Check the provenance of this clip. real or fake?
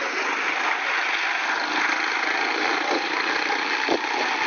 real